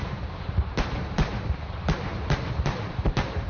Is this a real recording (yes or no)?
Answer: no